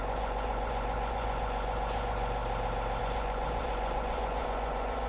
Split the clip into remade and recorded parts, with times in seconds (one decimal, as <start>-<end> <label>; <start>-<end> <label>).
0.0-2.4 remade; 2.4-3.0 recorded; 3.0-5.1 remade